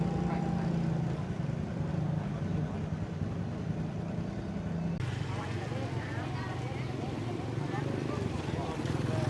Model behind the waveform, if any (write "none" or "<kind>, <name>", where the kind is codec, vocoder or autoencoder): none